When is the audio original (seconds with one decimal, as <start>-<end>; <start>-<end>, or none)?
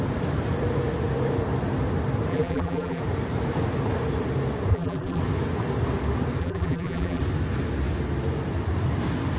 0.0-2.3; 3.0-4.7; 5.2-6.4; 7.2-9.4